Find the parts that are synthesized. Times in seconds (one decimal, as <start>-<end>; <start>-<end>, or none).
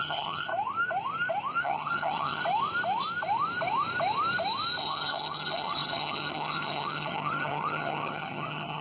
0.0-0.5; 1.6-2.4; 4.8-8.8